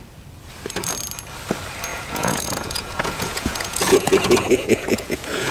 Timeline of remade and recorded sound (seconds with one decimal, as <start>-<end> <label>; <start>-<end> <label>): 0.0-1.9 recorded; 1.9-5.5 remade